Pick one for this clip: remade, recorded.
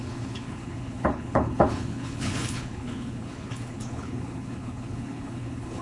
remade